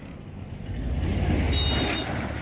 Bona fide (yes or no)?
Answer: yes